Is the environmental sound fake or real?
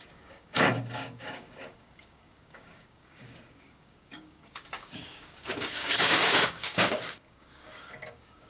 fake